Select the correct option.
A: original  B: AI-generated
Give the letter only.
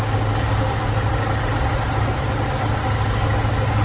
A